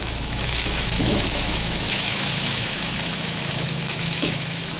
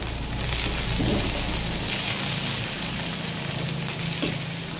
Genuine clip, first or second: second